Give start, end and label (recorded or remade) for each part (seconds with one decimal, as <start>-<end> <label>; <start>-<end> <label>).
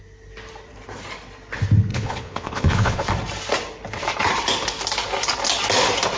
0.0-1.9 recorded; 1.9-3.1 remade; 3.1-6.2 recorded